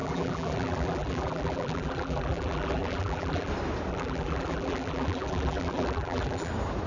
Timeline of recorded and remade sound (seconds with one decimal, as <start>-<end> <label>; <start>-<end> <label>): 0.0-3.5 remade; 3.5-3.9 recorded; 3.9-6.5 remade; 6.5-6.9 recorded